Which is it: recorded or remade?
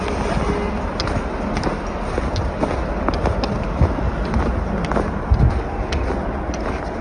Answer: recorded